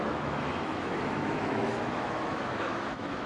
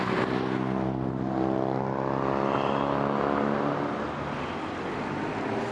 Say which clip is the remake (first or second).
first